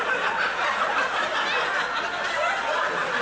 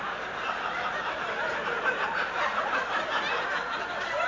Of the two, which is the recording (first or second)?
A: first